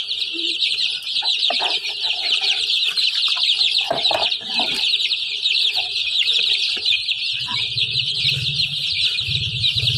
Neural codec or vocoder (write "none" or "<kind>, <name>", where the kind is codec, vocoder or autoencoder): vocoder, BigVGAN v2